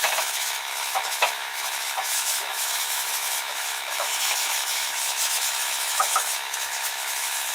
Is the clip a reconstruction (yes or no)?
yes